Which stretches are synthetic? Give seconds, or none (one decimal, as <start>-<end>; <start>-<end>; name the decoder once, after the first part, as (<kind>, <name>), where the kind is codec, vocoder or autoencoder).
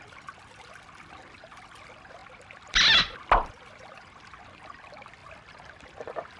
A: none